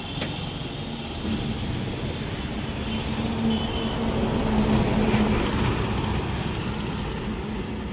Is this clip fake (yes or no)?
no